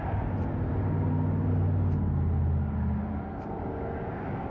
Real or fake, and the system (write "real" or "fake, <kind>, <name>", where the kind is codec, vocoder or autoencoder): real